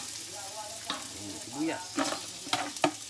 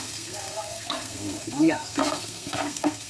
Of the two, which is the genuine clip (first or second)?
first